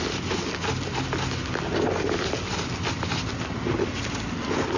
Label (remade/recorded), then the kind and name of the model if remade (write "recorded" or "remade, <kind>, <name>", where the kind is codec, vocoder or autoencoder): recorded